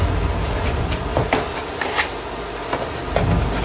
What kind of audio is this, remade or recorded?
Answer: recorded